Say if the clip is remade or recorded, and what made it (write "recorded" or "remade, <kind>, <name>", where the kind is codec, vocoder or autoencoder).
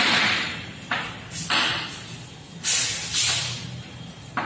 recorded